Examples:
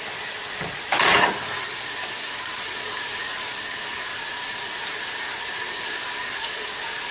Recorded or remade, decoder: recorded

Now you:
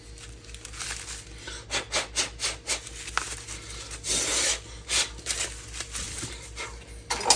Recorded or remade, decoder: recorded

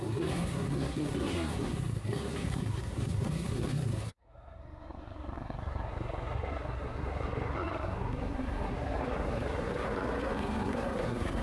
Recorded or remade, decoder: remade, codec, SNAC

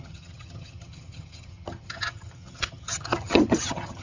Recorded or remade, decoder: remade, vocoder, HiFi-GAN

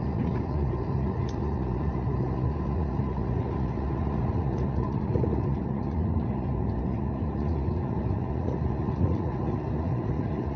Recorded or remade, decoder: remade, vocoder, Vocos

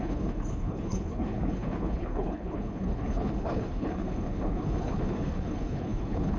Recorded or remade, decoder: remade, codec, HILCodec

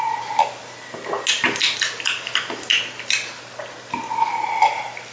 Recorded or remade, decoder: recorded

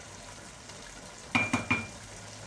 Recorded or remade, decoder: recorded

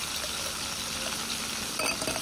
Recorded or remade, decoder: recorded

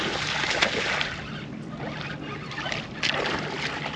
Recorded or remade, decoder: recorded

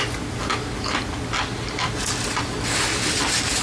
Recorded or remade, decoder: recorded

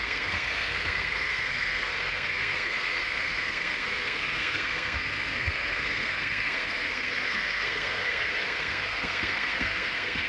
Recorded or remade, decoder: remade, codec, SNAC